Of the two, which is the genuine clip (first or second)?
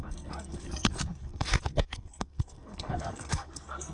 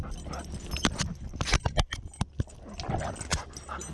second